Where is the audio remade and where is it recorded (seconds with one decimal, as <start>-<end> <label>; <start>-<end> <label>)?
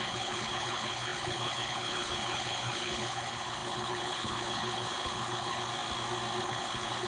0.0-5.7 remade; 5.7-6.4 recorded; 6.4-7.1 remade